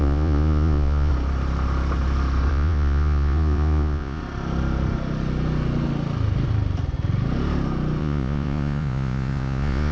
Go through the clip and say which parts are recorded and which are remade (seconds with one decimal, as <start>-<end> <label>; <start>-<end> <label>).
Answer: 0.0-1.1 remade; 1.1-2.5 recorded; 2.5-4.2 remade; 4.2-8.0 recorded; 8.0-9.9 remade